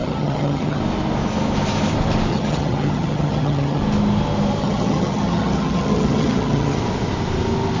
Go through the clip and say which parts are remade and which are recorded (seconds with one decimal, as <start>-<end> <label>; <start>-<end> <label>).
0.0-0.8 remade; 0.8-2.3 recorded; 2.3-3.8 remade; 3.8-4.6 recorded; 4.6-6.8 remade; 6.8-7.8 recorded